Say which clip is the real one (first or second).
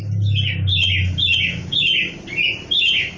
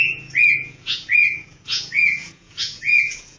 first